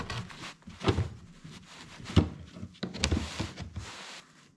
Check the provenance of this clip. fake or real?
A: real